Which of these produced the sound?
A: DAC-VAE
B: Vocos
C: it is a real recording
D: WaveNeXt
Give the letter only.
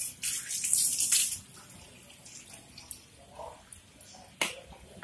C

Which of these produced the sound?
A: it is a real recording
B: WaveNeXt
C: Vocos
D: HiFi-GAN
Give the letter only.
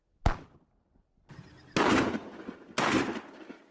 A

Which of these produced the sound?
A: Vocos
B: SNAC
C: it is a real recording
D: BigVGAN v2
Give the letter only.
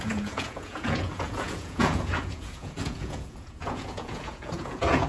A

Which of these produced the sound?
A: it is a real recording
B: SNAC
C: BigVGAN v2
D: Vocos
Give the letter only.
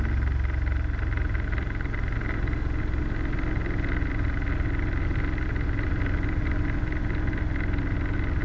A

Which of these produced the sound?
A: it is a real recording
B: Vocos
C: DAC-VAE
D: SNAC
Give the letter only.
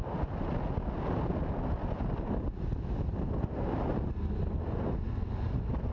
A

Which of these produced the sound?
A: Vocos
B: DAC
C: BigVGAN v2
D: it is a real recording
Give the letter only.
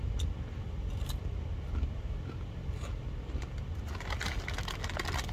D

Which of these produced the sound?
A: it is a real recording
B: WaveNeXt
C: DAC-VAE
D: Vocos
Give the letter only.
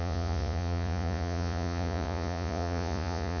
D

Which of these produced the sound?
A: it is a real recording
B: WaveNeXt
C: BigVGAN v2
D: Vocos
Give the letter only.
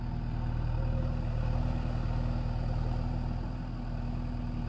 A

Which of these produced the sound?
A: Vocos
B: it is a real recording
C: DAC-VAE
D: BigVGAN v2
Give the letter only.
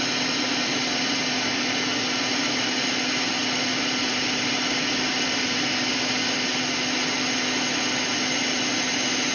B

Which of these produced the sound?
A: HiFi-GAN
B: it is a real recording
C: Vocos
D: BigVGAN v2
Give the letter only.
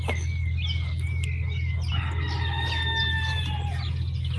B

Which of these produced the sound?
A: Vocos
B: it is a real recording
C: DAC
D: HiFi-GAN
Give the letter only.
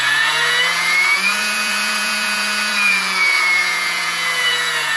A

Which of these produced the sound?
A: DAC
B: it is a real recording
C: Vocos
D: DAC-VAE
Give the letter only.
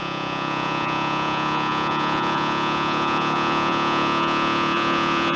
C